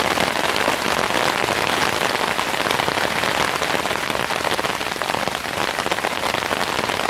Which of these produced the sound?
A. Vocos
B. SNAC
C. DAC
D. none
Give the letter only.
D